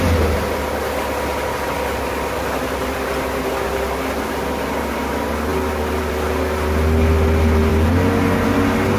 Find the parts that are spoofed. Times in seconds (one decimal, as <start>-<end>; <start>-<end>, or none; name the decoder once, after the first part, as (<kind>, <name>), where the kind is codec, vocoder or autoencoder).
none